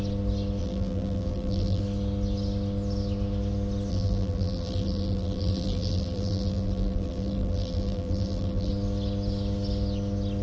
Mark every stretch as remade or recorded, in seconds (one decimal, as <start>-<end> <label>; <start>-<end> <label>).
0.0-0.6 recorded; 0.6-1.8 remade; 1.8-3.9 recorded; 3.9-8.7 remade; 8.7-10.4 recorded